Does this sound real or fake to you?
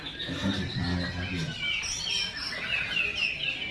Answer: real